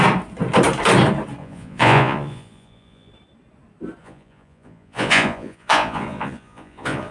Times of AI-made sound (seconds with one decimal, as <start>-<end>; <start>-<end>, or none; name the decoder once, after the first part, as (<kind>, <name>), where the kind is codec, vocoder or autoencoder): 1.4-3.1 (vocoder, Vocos); 4.0-7.1